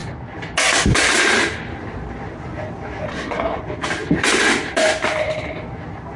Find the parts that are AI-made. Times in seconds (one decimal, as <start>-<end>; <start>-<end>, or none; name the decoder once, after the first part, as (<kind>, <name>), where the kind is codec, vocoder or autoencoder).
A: 3.1-3.6 (codec, SNAC)